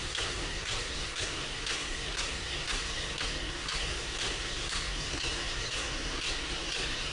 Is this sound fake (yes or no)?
yes